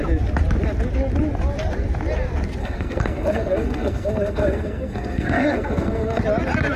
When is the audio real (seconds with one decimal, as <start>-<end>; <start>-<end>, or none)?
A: 0.0-2.6; 6.2-6.8